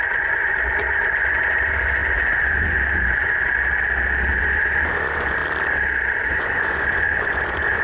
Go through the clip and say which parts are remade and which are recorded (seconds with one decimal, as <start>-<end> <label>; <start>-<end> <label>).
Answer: 0.0-3.7 remade; 3.7-4.3 recorded; 4.3-5.4 remade; 5.4-6.2 recorded; 6.2-7.8 remade